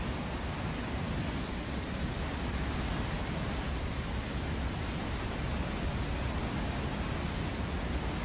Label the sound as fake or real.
real